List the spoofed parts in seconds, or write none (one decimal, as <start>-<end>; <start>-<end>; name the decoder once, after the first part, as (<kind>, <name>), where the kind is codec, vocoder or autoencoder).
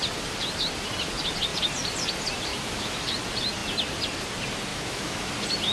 2.5-3.0 (autoencoder, DAC-VAE); 4.7-5.3